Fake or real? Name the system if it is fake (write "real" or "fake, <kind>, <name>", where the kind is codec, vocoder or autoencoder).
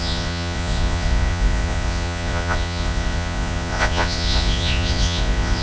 fake, vocoder, Vocos